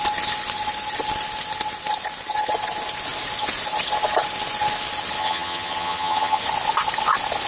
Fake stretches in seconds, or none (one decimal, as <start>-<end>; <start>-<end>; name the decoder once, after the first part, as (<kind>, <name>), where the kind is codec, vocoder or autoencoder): 5.2-6.4 (vocoder, HiFi-GAN)

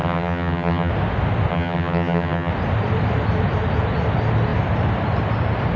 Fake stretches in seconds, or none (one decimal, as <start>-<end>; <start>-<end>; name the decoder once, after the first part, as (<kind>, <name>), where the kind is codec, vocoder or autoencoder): 0.0-0.9 (vocoder, HiFi-GAN); 1.5-2.5

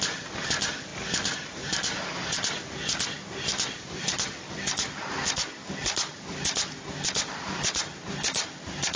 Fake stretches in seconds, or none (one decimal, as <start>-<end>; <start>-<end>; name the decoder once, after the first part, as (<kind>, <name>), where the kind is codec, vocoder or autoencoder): none

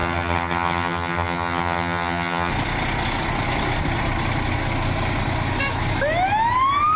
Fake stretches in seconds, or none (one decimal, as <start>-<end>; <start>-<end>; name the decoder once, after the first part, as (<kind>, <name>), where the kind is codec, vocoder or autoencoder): 0.0-2.5 (vocoder, HiFi-GAN)

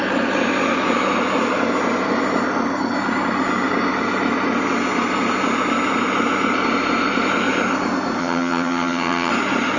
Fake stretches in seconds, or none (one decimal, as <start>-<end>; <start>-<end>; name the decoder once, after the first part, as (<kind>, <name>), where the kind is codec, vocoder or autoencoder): 8.2-9.3 (vocoder, HiFi-GAN)